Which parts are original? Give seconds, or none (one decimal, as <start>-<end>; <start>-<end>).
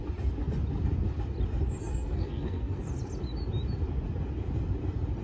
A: 0.0-1.8; 2.8-5.2